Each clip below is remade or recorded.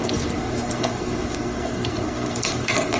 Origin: remade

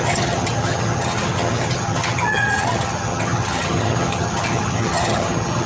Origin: remade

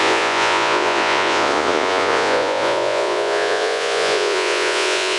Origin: remade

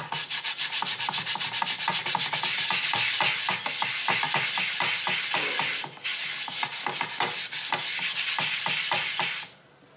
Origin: recorded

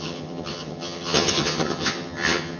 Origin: remade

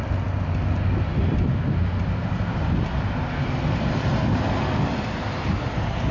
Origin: recorded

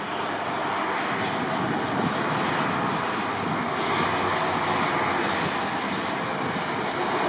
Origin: recorded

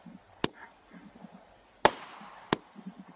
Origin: recorded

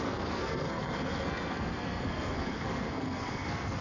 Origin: remade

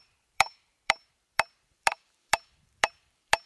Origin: remade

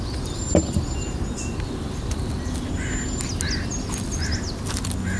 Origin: recorded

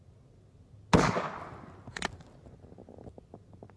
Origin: recorded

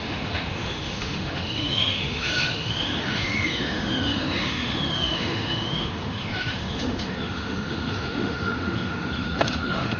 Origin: remade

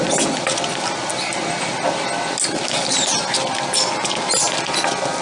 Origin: recorded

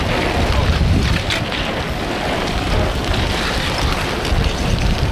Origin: recorded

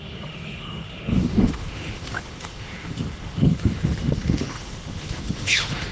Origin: remade